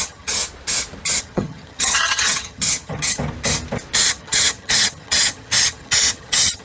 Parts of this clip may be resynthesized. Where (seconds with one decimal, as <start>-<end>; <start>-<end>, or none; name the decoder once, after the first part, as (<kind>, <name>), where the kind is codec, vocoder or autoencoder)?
0.0-0.4 (vocoder, HiFi-GAN); 1.2-3.2; 4.1-6.6